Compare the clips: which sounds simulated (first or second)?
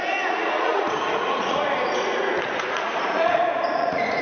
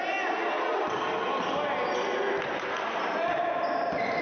first